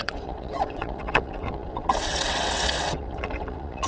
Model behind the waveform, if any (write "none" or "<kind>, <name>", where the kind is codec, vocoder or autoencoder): vocoder, WaveNeXt